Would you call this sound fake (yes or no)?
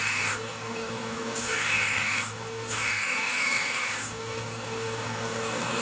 yes